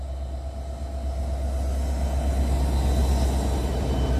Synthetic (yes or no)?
no